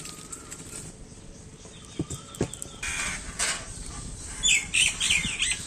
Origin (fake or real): real